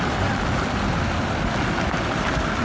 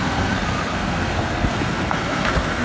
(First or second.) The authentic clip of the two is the first